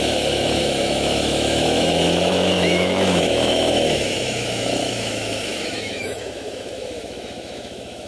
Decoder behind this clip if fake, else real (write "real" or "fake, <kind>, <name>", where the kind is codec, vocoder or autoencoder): fake, autoencoder, DAC-VAE